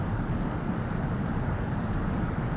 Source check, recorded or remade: remade